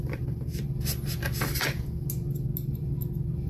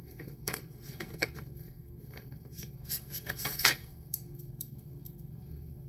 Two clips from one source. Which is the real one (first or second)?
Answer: first